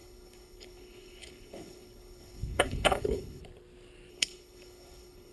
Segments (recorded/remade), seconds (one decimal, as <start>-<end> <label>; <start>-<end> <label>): 0.0-3.4 remade; 3.4-4.1 recorded; 4.1-5.3 remade